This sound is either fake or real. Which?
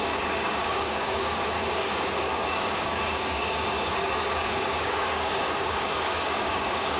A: fake